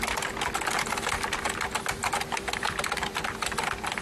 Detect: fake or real real